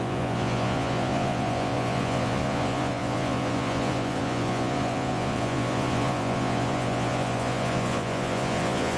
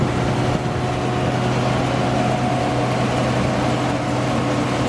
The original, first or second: second